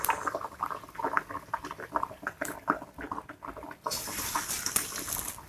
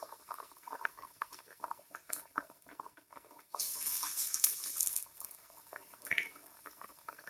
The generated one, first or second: second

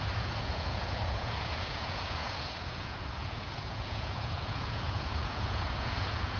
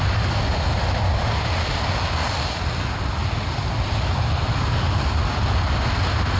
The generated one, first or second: first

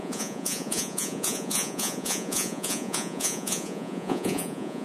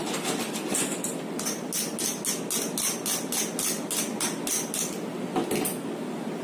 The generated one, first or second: first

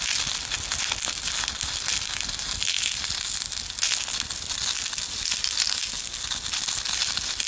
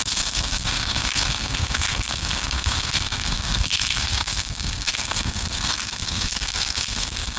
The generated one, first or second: second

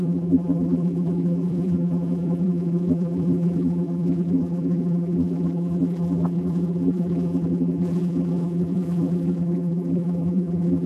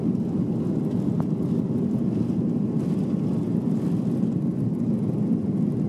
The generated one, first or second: first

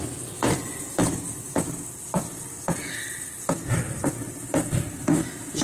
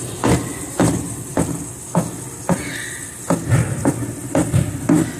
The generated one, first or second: first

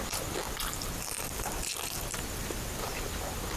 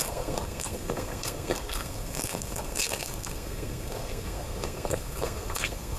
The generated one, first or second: second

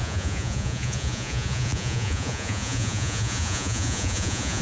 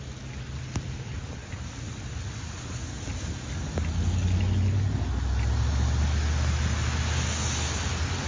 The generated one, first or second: first